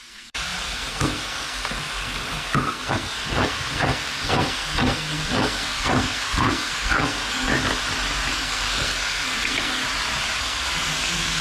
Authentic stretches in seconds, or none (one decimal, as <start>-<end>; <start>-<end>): 7.5-8.3; 9.8-10.4